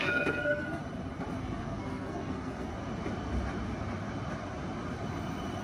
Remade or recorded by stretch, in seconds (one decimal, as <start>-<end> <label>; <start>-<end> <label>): 0.0-0.8 remade; 0.8-1.4 recorded; 1.4-2.7 remade; 2.7-5.6 recorded